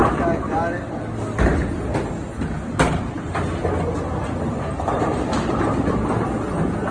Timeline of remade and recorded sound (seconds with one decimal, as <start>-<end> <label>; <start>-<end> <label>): 0.0-6.9 recorded